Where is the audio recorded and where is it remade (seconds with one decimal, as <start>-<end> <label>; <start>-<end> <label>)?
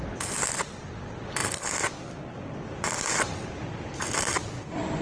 0.0-5.0 recorded